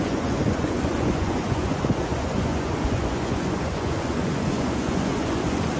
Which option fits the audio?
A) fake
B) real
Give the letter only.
A